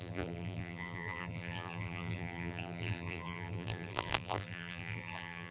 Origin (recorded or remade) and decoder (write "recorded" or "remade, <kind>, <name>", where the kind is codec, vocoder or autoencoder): remade, vocoder, BigVGAN v2